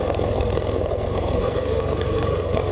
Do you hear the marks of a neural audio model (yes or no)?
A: yes